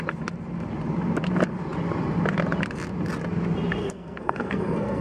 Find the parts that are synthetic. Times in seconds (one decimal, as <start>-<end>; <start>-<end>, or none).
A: 3.8-5.0